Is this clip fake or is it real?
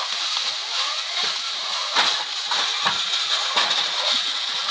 fake